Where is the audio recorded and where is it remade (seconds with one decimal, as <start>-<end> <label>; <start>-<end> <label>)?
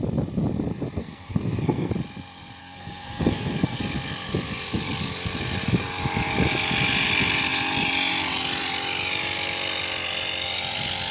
0.0-1.0 recorded; 1.0-1.9 remade; 1.9-2.6 recorded; 2.6-3.8 remade; 3.8-11.1 recorded